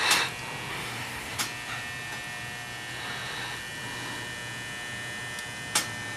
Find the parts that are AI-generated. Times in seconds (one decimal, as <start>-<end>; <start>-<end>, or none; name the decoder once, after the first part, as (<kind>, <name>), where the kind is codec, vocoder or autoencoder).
0.7-1.4 (codec, SNAC)